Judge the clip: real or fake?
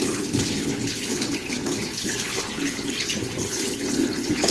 fake